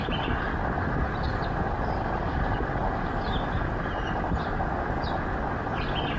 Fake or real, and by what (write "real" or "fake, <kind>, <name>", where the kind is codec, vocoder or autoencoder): real